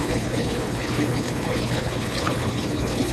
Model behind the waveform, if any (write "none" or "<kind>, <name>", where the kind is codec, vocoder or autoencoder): codec, HILCodec